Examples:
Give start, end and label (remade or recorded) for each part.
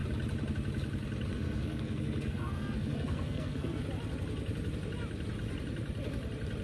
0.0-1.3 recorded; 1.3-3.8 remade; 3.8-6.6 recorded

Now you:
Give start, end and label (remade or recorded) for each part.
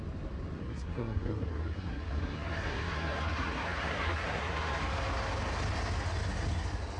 0.0-0.6 recorded; 0.6-4.8 remade; 4.8-7.0 recorded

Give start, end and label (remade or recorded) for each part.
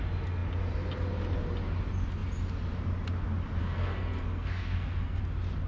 0.0-3.6 recorded; 3.6-5.2 remade; 5.2-5.7 recorded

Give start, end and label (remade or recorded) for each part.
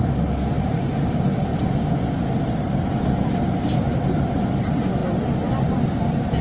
0.0-6.4 recorded